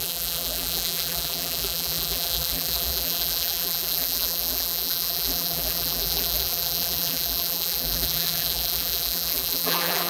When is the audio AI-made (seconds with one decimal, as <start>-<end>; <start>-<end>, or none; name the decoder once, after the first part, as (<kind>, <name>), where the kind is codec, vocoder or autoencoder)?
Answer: 0.0-10.1 (vocoder, BigVGAN v2)